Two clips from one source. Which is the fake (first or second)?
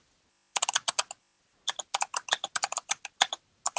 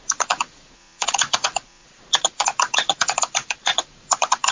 second